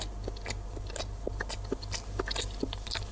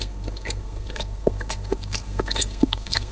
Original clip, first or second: first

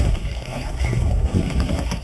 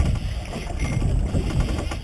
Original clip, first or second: second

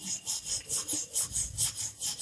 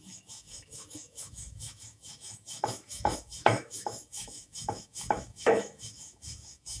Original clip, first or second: first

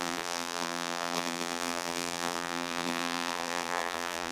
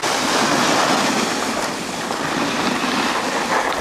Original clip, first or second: second